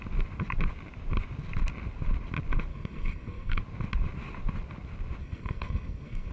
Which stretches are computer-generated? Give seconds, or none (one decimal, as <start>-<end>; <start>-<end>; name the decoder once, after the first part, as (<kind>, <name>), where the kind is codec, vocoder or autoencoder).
2.7-3.6 (codec, SNAC); 5.2-6.3